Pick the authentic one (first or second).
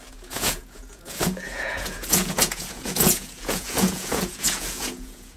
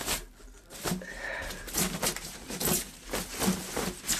second